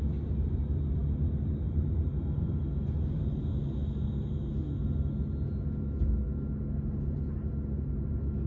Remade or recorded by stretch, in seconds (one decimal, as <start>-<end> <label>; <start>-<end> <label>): 0.0-8.5 recorded